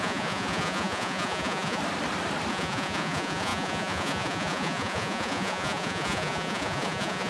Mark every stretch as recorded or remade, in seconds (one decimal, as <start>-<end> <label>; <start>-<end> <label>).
0.0-1.8 remade; 1.8-2.5 recorded; 2.5-7.3 remade